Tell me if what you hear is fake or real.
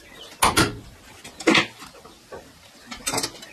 real